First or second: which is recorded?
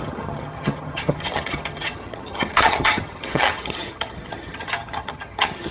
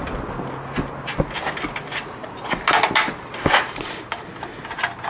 second